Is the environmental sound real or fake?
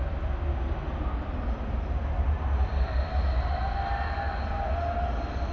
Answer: real